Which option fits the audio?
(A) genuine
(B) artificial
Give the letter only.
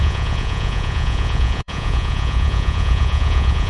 B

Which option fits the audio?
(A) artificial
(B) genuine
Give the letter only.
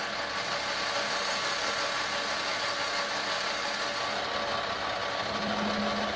B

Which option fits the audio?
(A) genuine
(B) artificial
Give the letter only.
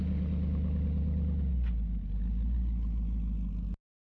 A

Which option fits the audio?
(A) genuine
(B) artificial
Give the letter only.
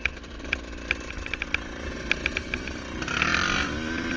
A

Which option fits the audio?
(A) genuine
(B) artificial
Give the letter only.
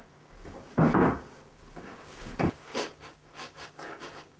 B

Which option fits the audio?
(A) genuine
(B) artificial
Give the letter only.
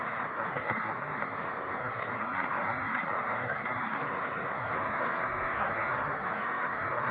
B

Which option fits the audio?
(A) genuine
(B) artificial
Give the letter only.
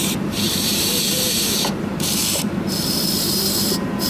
B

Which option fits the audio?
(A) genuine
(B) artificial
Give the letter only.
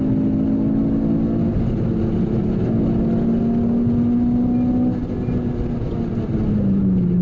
A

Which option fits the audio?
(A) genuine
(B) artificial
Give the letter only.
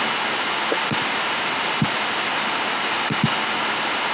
A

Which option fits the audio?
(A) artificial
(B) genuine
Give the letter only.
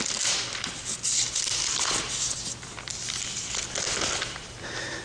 A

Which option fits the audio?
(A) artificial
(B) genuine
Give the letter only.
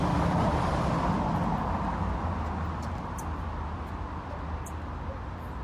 B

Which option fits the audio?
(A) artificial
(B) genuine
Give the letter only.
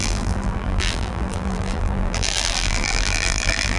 A